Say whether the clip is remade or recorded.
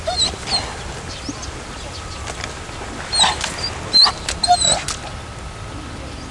recorded